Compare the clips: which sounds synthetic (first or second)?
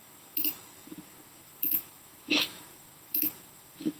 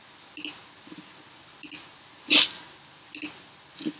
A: first